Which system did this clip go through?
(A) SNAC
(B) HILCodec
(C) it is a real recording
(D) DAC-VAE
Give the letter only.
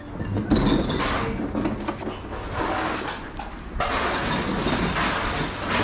C